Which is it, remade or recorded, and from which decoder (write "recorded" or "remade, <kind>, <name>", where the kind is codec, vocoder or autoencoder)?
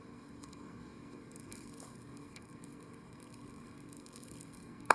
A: remade, codec, SNAC